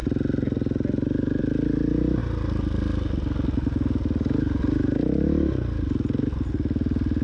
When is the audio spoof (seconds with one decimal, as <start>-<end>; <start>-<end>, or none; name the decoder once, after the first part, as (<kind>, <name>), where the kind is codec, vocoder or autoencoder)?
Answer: none